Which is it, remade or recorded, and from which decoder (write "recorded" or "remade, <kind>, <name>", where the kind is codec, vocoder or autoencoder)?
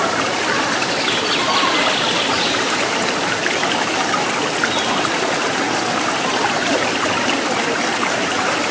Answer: remade, vocoder, BigVGAN v2